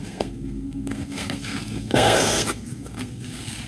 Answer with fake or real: fake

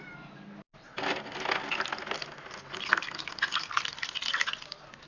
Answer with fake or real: real